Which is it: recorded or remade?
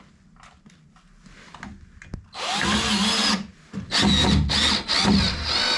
recorded